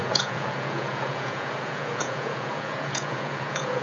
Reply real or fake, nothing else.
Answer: fake